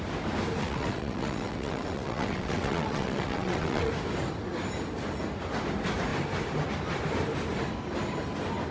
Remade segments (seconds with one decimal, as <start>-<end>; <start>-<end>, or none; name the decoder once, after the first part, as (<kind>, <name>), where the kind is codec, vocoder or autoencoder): 0.6-3.9 (vocoder, WaveNeXt)